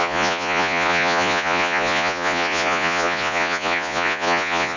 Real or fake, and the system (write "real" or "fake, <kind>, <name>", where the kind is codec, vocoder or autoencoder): fake, vocoder, Vocos